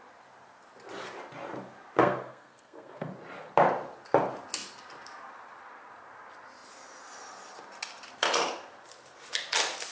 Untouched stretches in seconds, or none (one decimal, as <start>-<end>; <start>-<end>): 0.0-2.0; 3.1-9.9